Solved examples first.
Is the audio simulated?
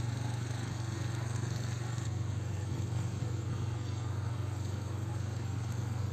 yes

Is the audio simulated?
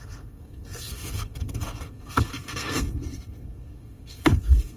yes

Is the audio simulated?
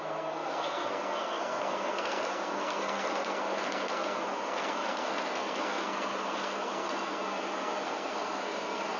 yes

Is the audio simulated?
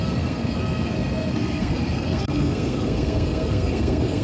yes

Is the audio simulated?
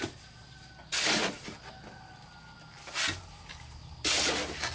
no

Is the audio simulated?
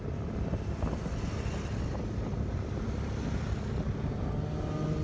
no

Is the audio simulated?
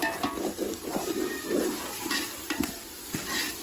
no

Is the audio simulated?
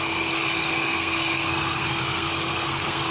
yes